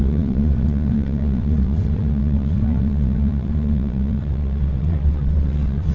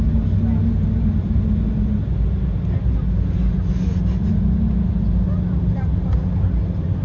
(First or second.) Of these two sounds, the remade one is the first